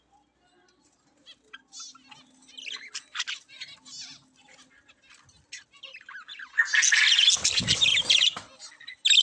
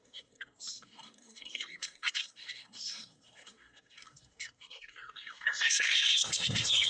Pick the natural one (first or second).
first